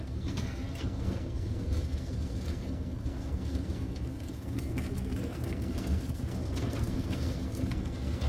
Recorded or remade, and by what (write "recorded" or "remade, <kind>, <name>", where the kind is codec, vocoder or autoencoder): remade, codec, SNAC